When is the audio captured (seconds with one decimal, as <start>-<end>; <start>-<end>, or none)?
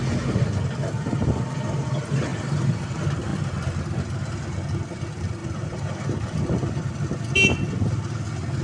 0.0-2.3; 2.9-3.3; 4.3-5.4; 6.7-8.6